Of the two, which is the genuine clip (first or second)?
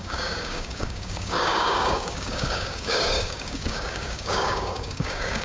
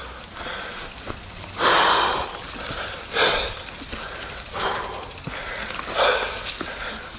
second